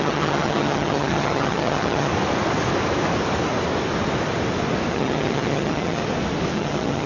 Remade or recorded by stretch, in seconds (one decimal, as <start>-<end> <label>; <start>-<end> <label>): 0.0-2.1 remade; 2.1-4.9 recorded; 4.9-6.0 remade; 6.0-6.5 recorded; 6.5-7.1 remade